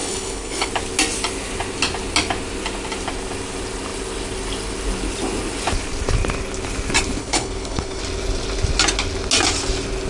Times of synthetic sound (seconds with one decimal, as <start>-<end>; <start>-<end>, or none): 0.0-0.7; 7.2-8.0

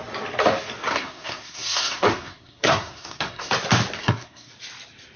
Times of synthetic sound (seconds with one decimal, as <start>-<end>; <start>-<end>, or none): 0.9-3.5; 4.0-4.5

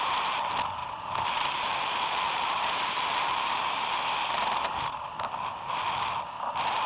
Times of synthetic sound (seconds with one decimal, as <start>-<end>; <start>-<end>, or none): 0.8-4.9

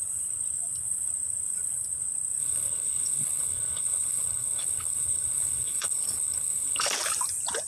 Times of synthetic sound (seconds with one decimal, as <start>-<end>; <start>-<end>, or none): 2.4-6.9

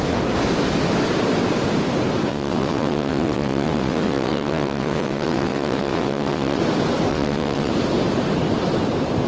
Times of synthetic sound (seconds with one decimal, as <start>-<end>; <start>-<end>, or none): 2.3-6.6; 7.1-7.7